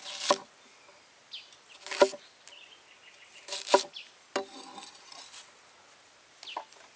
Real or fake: real